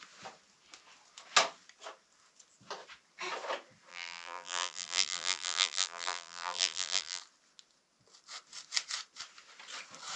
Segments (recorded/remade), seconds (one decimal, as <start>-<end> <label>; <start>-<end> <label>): 0.0-3.9 recorded; 3.9-7.2 remade; 7.2-10.2 recorded